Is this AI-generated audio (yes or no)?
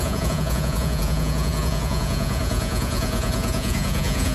yes